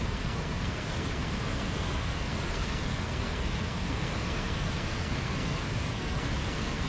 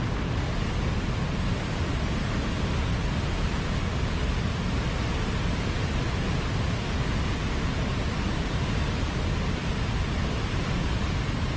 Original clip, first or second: second